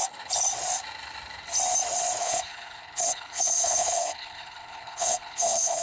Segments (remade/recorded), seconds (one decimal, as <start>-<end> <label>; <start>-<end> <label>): 0.0-2.2 recorded; 2.2-5.8 remade